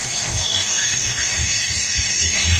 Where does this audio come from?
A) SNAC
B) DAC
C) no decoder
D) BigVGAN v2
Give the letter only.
B